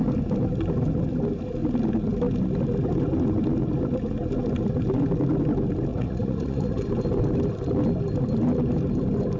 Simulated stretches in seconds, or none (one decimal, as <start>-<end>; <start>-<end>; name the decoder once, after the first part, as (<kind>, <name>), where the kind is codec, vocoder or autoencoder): 5.9-6.8 (vocoder, Vocos)